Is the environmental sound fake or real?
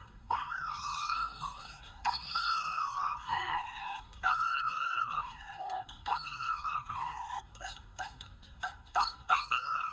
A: fake